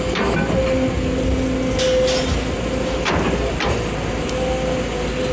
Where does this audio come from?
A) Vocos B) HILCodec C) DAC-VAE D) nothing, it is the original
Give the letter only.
D